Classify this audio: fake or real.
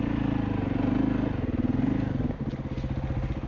real